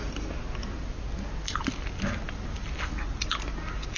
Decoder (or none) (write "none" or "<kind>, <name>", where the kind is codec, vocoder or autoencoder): none